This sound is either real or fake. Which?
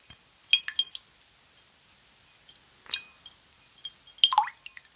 real